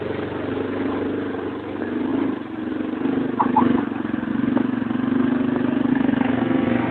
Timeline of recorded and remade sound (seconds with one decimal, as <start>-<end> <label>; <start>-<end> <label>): 0.0-5.9 recorded; 5.9-6.9 remade